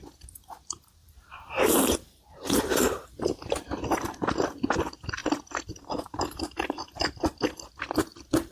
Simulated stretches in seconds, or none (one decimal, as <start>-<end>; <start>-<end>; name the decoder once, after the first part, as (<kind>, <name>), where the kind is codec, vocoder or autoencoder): 1.0-3.5 (vocoder, BigVGAN v2)